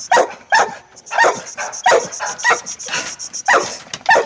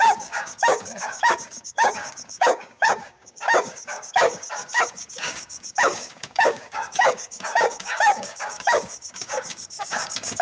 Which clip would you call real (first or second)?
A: first